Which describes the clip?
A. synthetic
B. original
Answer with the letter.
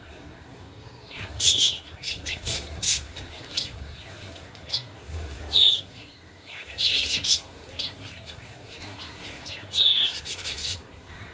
A